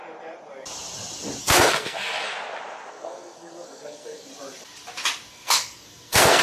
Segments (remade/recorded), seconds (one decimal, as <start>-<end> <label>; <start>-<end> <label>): 0.0-1.4 recorded; 1.4-2.3 remade; 2.3-2.9 recorded; 2.9-4.3 remade; 4.3-5.3 recorded; 5.3-6.4 remade